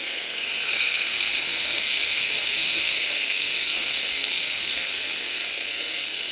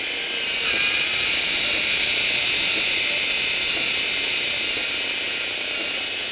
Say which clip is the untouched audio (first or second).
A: second